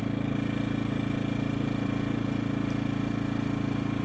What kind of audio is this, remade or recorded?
recorded